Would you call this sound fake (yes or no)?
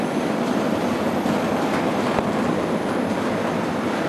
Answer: no